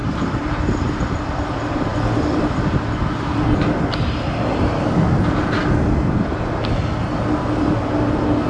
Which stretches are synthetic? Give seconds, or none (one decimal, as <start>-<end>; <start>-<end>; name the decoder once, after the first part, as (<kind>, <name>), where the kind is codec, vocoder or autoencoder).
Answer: 0.0-1.0 (vocoder, BigVGAN v2)